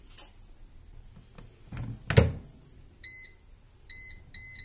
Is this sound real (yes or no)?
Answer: yes